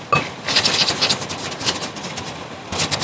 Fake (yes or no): no